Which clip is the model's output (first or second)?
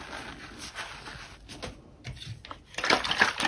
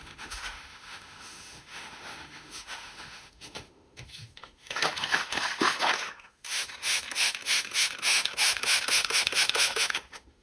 second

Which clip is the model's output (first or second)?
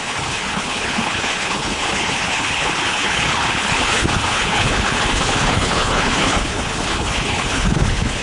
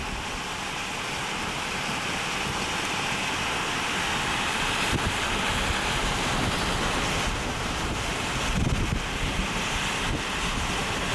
first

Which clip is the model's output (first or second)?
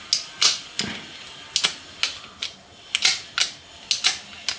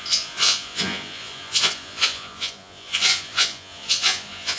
second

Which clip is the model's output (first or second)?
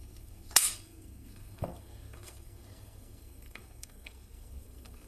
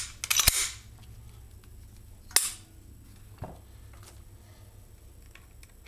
first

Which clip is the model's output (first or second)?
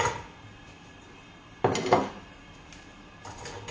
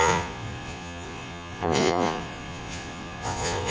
second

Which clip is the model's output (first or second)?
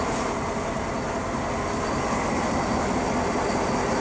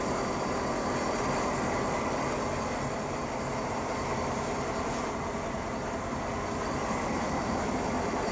second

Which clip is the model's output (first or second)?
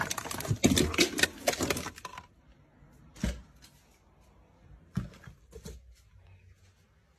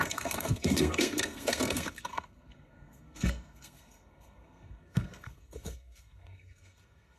second